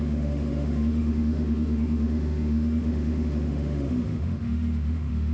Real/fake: fake